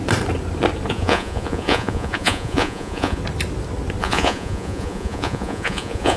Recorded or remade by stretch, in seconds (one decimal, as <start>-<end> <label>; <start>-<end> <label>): 0.0-0.9 recorded; 0.9-3.2 remade; 3.2-4.0 recorded; 4.0-6.2 remade